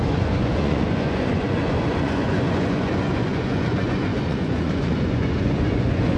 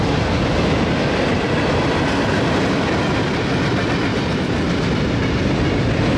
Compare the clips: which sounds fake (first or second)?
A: first